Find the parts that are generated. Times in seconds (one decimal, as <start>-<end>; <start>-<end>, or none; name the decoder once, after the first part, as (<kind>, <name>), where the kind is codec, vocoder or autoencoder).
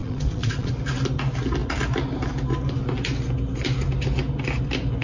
0.0-0.7 (vocoder, Vocos)